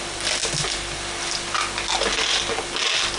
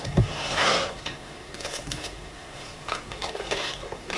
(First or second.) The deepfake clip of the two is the second